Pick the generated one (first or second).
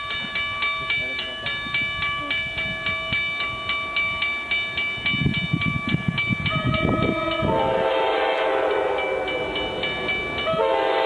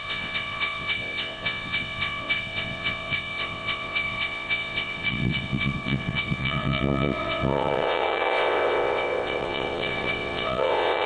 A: second